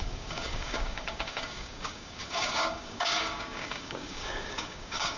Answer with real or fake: fake